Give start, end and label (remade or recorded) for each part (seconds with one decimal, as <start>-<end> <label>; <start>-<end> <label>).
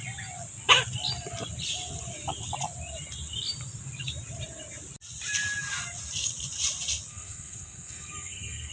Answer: 0.0-7.1 recorded; 7.1-8.7 remade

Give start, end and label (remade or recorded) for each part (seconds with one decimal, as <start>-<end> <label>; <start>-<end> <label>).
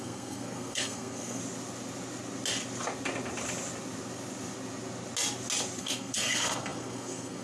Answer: 0.0-1.4 remade; 1.4-5.8 recorded; 5.8-7.4 remade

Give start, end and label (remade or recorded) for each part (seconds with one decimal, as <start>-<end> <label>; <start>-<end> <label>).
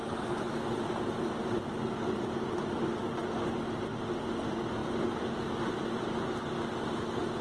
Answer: 0.0-7.4 recorded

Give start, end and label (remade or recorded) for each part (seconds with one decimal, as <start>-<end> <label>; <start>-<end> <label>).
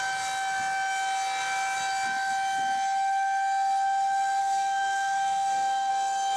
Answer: 0.0-4.4 recorded; 4.4-5.9 remade; 5.9-6.4 recorded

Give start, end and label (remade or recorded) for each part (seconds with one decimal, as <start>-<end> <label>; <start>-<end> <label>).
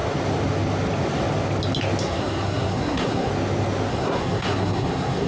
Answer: 0.0-2.0 recorded; 2.0-3.3 remade; 3.3-3.9 recorded; 3.9-5.3 remade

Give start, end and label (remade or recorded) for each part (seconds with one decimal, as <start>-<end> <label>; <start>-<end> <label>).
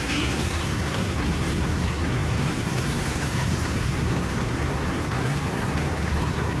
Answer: 0.0-6.6 remade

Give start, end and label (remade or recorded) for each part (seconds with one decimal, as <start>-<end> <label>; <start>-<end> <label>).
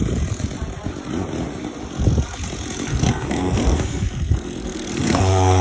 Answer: 0.0-2.9 recorded; 2.9-5.6 remade